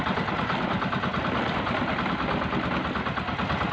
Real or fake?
real